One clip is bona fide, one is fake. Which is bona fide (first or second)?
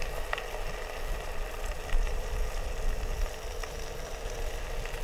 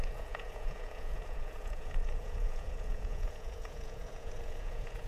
first